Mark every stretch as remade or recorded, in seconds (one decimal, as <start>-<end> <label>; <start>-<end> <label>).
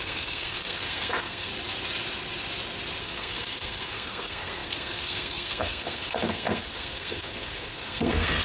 0.0-1.5 remade; 1.5-3.0 recorded; 3.0-8.4 remade